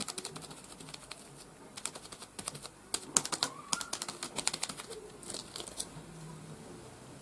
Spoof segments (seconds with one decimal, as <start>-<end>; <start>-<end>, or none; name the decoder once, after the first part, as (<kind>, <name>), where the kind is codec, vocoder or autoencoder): none